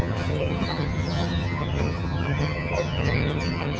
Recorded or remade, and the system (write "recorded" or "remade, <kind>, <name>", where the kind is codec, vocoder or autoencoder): remade, vocoder, HiFi-GAN